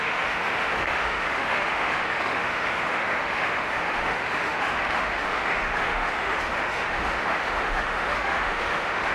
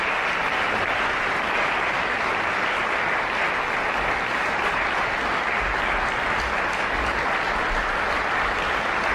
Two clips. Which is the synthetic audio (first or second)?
first